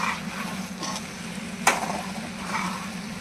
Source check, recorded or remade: recorded